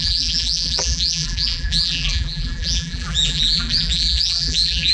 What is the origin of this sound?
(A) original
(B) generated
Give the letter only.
B